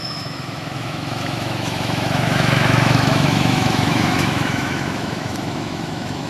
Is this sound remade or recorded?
remade